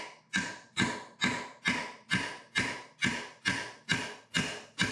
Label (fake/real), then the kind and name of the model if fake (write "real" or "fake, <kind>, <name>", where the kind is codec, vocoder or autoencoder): real